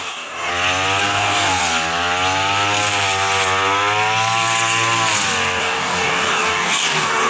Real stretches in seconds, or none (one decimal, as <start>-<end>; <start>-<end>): 0.5-1.0; 1.6-5.6